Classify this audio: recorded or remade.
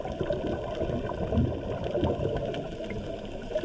recorded